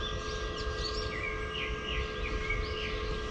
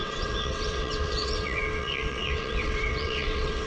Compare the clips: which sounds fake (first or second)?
second